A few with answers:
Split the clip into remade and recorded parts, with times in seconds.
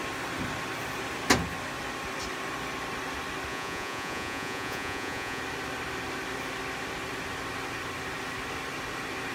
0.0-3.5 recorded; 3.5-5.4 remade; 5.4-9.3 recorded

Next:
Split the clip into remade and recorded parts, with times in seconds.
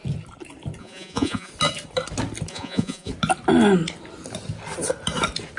0.0-0.8 recorded; 0.8-1.5 remade; 1.5-2.5 recorded; 2.5-3.1 remade; 3.1-5.6 recorded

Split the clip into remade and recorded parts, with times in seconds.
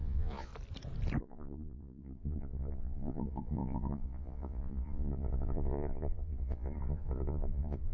0.0-0.5 remade; 0.5-1.2 recorded; 1.2-7.9 remade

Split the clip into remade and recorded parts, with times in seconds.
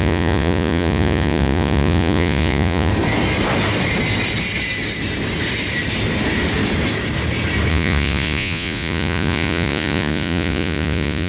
0.0-2.9 remade; 2.9-7.7 recorded; 7.7-11.3 remade